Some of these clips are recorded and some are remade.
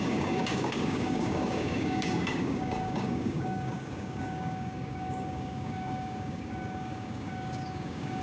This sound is remade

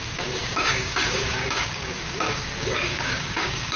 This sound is remade